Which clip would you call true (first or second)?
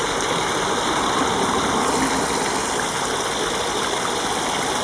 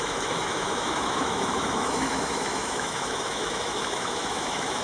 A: first